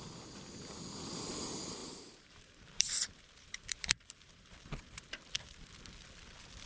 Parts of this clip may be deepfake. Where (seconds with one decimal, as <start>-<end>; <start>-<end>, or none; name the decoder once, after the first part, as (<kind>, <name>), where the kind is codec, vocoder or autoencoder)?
1.8-5.8 (vocoder, BigVGAN v2)